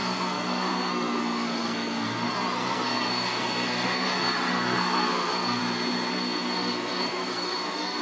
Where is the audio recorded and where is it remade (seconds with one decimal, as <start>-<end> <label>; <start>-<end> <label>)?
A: 0.0-5.6 remade; 5.6-6.1 recorded; 6.1-8.0 remade